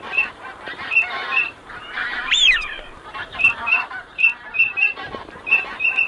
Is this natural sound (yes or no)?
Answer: no